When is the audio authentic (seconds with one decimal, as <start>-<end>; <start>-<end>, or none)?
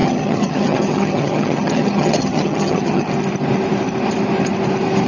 3.1-5.1